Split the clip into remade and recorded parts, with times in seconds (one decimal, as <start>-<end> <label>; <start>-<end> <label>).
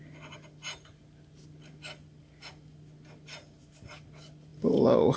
0.0-5.2 recorded